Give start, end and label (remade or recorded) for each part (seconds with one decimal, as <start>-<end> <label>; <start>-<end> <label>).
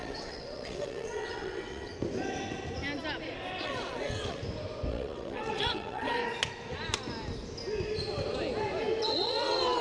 0.0-1.9 remade; 1.9-3.6 recorded; 3.6-4.4 remade; 4.4-4.9 recorded; 4.9-6.2 remade; 6.2-9.0 recorded; 9.0-9.8 remade